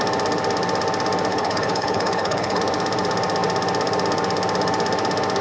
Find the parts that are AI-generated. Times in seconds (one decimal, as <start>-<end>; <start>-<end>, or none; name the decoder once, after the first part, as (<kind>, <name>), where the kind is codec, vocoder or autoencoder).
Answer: 1.3-2.6 (codec, HILCodec)